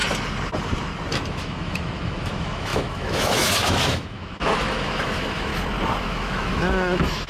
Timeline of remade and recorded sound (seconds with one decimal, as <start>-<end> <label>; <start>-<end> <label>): 0.0-1.3 recorded; 1.3-5.5 remade; 5.5-6.0 recorded; 6.0-7.3 remade